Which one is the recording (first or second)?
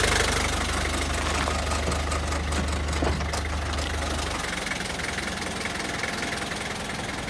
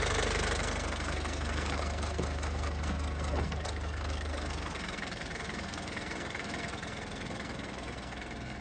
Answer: first